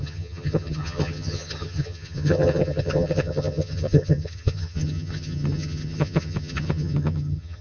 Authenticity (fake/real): fake